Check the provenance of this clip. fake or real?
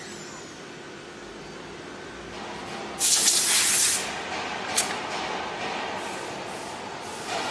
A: real